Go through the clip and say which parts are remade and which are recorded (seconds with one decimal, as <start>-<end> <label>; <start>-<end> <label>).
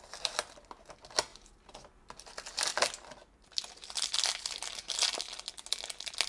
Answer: 0.0-6.3 recorded